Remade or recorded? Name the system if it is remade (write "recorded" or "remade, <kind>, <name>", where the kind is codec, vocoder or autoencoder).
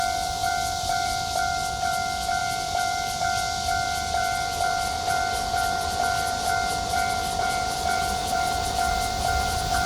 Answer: remade, vocoder, BigVGAN v2